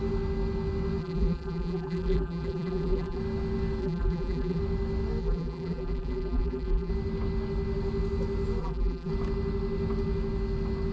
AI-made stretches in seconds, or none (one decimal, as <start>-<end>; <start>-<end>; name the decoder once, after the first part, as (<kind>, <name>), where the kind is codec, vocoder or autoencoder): 1.0-3.2 (vocoder, BigVGAN v2); 3.8-4.6; 5.2-6.9; 8.6-9.1